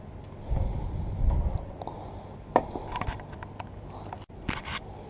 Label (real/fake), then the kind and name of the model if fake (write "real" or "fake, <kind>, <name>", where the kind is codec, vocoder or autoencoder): real